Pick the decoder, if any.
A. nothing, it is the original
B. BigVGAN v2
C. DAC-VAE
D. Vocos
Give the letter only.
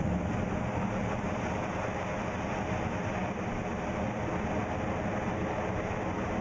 A